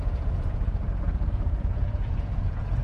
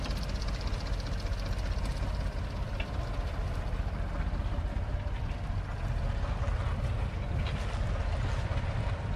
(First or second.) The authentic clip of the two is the second